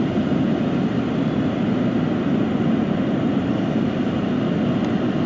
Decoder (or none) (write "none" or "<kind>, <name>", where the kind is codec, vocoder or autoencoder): none